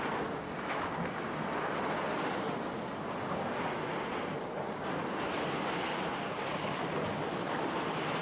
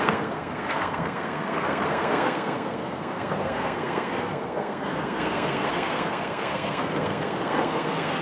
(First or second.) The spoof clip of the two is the second